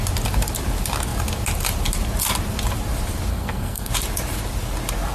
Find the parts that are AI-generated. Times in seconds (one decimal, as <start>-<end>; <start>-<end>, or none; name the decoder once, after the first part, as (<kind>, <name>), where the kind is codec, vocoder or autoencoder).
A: 3.3-3.9 (codec, SNAC)